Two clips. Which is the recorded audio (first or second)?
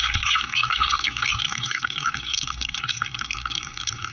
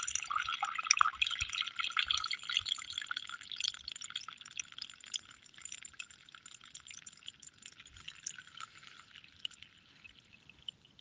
second